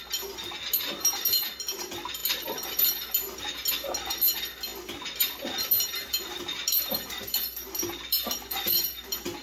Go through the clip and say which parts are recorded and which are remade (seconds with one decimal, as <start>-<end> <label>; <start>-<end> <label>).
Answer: 0.0-9.4 recorded